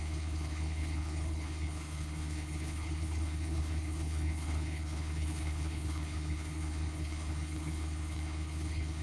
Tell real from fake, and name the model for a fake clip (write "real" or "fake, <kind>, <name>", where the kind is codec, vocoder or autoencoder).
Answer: fake, codec, HILCodec